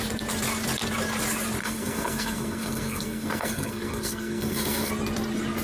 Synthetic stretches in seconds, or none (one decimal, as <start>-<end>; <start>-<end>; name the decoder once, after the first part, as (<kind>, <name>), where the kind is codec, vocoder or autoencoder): 1.6-4.9 (codec, SNAC)